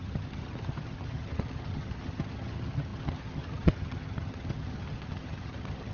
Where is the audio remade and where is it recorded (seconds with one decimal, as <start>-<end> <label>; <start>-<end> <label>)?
0.0-5.9 remade